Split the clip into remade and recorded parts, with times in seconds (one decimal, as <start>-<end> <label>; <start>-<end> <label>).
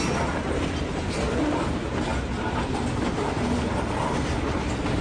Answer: 0.0-5.0 recorded